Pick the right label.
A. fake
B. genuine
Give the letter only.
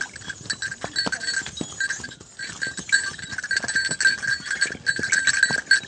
B